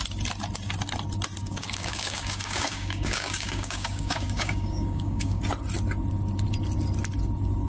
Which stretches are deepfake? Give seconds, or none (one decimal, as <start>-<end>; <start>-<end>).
1.4-5.4